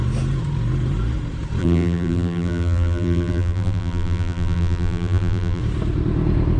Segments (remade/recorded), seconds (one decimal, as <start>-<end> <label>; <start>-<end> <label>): 0.0-1.6 recorded; 1.6-5.6 remade; 5.6-6.6 recorded